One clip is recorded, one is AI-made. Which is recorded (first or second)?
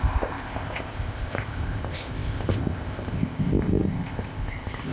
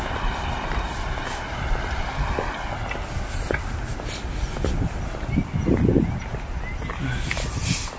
second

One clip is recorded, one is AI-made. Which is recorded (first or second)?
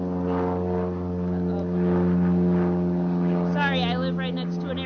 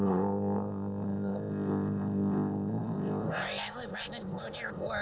first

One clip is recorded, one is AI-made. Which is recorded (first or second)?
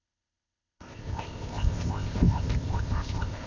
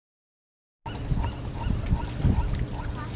second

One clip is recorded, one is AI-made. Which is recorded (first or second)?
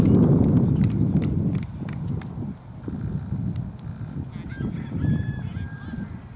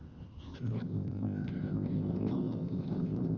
first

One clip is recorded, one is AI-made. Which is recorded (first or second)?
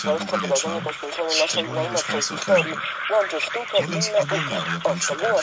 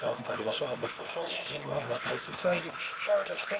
first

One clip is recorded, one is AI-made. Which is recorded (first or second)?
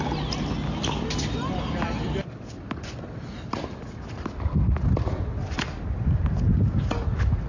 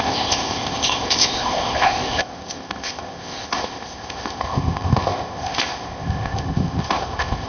first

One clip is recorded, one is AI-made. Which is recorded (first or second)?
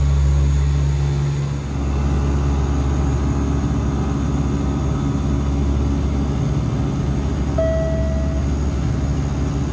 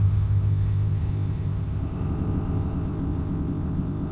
first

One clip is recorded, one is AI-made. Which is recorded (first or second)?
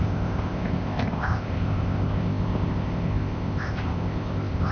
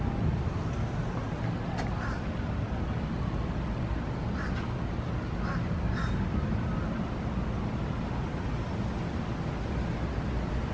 second